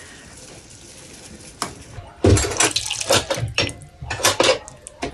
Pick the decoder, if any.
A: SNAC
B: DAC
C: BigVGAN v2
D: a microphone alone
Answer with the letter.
D